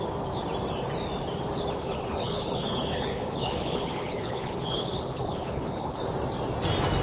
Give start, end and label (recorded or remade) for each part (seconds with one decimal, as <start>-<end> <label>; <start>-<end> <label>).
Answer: 0.0-1.8 recorded; 1.8-6.0 remade; 6.0-7.0 recorded